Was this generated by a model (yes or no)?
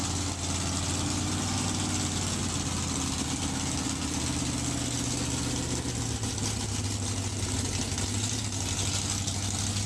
no